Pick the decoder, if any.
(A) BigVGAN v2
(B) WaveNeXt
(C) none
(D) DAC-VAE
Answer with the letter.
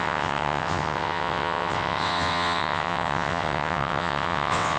B